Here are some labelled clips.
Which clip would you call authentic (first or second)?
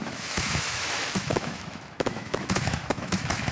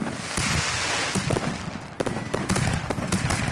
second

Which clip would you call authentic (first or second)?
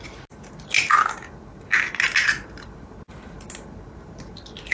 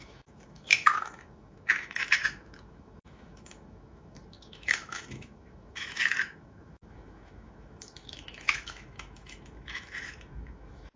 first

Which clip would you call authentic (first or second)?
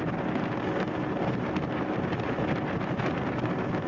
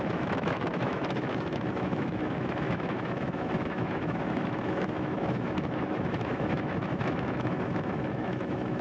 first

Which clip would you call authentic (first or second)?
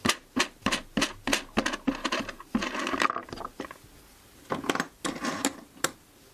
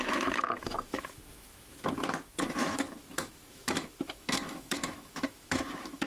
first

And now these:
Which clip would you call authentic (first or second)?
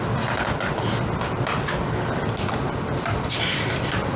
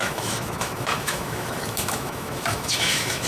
first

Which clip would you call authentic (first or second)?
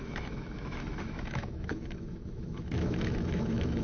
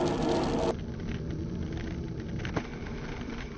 second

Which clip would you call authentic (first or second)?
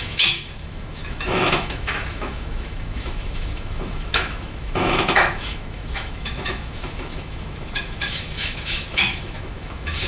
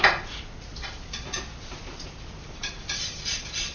second